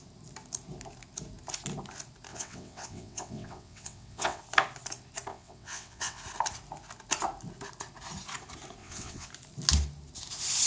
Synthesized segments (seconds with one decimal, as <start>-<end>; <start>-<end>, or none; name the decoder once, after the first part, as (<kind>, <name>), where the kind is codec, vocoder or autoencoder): 2.3-4.4 (vocoder, WaveNeXt); 5.3-6.2; 8.8-9.3